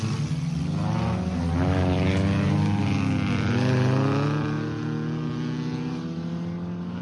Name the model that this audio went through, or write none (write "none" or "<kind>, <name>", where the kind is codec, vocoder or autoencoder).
none